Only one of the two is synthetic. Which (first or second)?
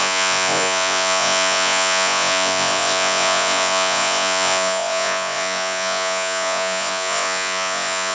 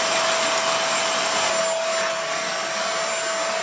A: first